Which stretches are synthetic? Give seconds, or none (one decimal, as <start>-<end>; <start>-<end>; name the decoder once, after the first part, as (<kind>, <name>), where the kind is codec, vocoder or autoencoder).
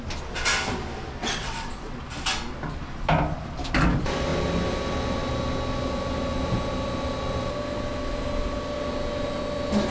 1.2-2.0 (vocoder, WaveNeXt)